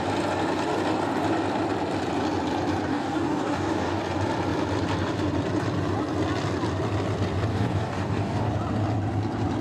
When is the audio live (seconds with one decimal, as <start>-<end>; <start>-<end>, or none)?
0.0-2.9; 4.0-7.5; 8.5-9.6